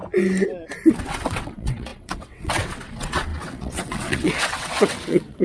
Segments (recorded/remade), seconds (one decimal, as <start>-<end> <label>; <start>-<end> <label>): 0.0-1.0 recorded; 1.0-5.4 remade